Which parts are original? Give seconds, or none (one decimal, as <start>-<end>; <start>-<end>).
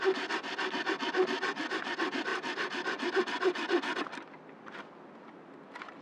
0.0-6.0